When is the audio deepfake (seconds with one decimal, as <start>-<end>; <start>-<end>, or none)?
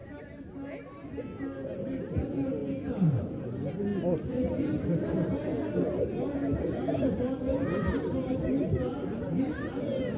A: none